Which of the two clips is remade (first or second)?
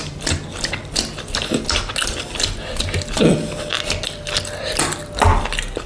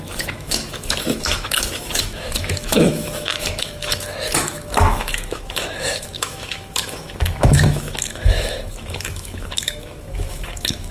second